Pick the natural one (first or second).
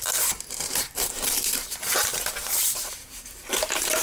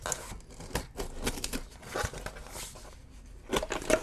second